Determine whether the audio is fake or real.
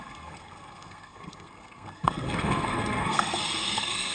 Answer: fake